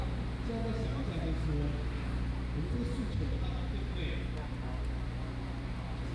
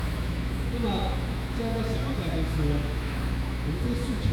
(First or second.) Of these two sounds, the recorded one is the first